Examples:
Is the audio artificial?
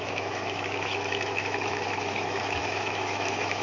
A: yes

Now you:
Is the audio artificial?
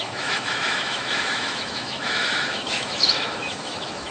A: yes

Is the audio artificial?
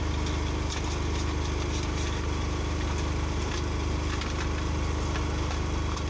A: no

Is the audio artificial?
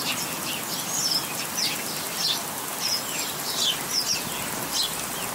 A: no